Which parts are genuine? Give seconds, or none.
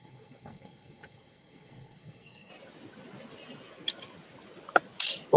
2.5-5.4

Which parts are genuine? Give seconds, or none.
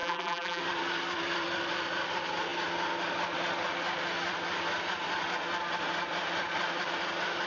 0.6-7.5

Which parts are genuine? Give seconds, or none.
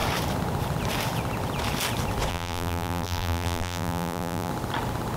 0.0-2.3; 4.5-5.2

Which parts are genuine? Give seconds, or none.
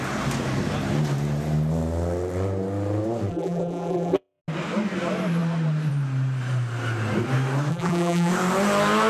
0.0-3.3; 4.4-7.7; 8.3-9.1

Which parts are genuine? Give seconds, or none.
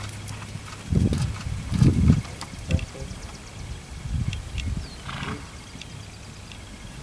0.0-7.0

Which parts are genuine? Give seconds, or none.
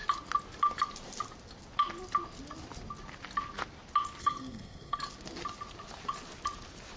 0.0-4.2; 5.0-7.0